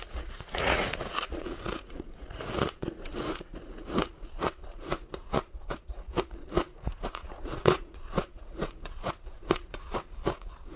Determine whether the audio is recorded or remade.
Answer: remade